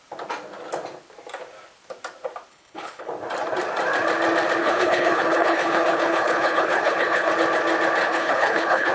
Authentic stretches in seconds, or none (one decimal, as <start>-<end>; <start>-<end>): 0.0-2.5; 3.1-4.6; 7.3-8.0

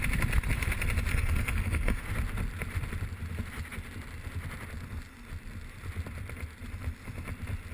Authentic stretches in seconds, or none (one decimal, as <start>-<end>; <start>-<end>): 0.0-1.1; 2.0-7.7

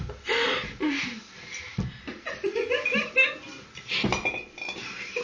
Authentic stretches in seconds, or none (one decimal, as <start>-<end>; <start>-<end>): 0.0-5.2

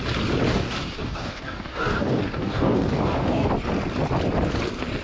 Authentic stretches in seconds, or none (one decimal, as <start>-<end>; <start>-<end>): 0.0-0.5; 3.5-5.0

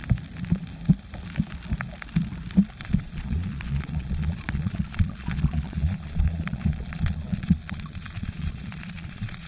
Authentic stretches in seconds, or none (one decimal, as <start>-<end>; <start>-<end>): 0.0-2.8

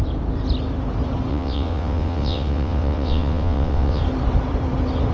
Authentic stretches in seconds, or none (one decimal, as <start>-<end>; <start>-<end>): 0.0-1.3; 4.0-5.1

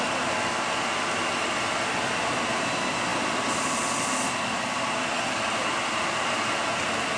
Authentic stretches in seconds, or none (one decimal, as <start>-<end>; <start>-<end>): 0.0-7.2

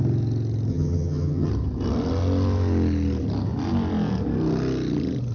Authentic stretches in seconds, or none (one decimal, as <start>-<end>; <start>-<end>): 0.0-0.7; 1.5-5.3